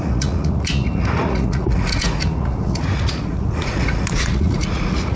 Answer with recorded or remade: remade